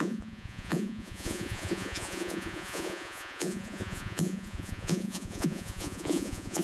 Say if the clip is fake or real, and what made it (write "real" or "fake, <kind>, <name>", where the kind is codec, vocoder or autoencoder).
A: fake, vocoder, Vocos